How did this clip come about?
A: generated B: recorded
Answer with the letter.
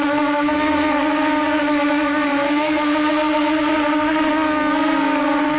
A